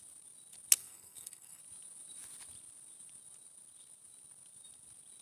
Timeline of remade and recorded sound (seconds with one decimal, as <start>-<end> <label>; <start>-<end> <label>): 0.0-0.8 recorded; 0.8-1.6 remade; 1.6-5.2 recorded